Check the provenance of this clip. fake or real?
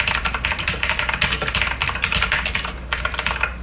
real